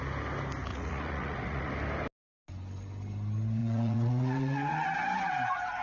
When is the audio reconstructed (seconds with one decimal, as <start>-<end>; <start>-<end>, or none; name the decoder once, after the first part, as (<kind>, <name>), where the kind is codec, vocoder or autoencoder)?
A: 0.7-1.7 (vocoder, Vocos); 3.6-4.7